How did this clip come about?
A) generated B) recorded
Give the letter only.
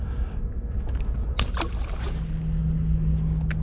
B